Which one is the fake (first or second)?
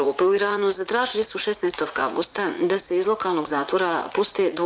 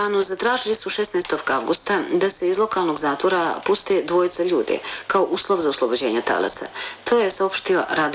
first